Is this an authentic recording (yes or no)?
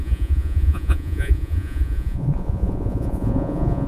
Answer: no